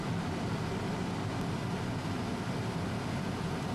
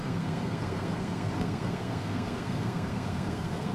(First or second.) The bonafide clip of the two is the first